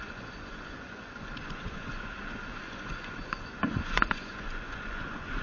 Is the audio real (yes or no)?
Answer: no